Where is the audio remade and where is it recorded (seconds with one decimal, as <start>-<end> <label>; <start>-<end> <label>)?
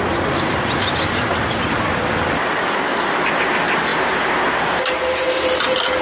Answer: 0.0-6.0 recorded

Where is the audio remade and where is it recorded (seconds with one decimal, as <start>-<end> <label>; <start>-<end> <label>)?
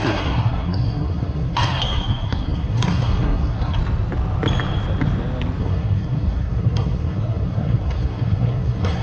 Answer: 0.0-3.8 remade; 3.8-5.6 recorded; 5.6-9.0 remade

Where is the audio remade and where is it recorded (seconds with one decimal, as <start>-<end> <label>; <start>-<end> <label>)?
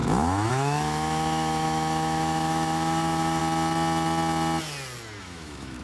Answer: 0.0-3.4 remade; 3.4-5.2 recorded; 5.2-5.8 remade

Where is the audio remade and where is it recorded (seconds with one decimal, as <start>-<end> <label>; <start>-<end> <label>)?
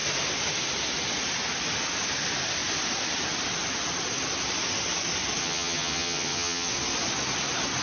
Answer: 0.0-5.4 recorded; 5.4-6.7 remade; 6.7-7.8 recorded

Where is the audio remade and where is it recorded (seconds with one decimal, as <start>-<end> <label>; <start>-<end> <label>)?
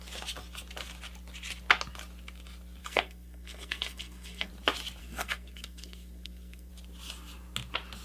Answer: 0.0-2.8 recorded; 2.8-4.5 remade; 4.5-5.0 recorded; 5.0-6.7 remade; 6.7-8.0 recorded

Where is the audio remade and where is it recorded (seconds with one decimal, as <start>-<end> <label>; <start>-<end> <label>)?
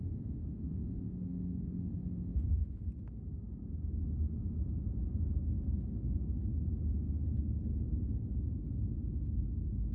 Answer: 0.0-0.4 recorded; 0.4-1.9 remade; 1.9-9.9 recorded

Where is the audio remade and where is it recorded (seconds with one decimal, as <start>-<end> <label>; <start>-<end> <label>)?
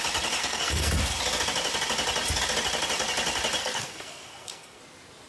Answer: 0.0-0.4 recorded; 0.4-0.9 remade; 0.9-3.6 recorded; 3.6-4.8 remade; 4.8-5.3 recorded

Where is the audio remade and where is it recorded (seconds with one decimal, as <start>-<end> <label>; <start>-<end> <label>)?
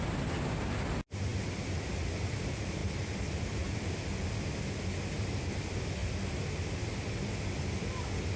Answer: 0.0-8.4 recorded